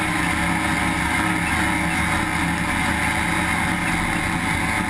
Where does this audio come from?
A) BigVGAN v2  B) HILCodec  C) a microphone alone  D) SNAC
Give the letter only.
C